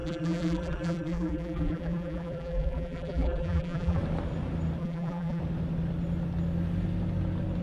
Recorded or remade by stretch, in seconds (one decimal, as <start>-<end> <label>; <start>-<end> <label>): 0.0-4.0 remade; 4.0-4.8 recorded; 4.8-5.4 remade; 5.4-7.6 recorded